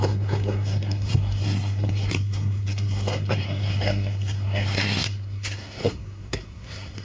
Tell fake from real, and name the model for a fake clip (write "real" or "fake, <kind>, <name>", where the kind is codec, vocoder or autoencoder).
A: fake, codec, SNAC